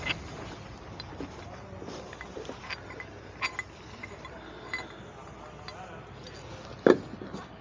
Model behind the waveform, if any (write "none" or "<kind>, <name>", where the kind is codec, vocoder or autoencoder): none